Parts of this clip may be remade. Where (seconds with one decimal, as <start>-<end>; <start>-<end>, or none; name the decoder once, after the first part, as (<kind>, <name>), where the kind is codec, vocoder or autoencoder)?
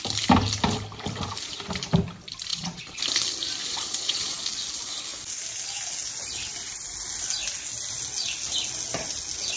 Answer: 2.5-3.0 (vocoder, Vocos); 3.6-4.4